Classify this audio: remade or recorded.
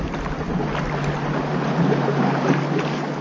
recorded